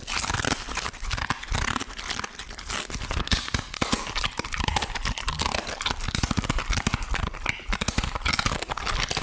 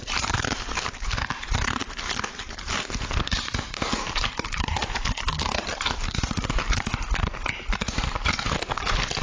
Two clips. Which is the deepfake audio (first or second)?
second